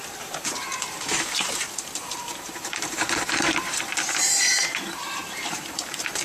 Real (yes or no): no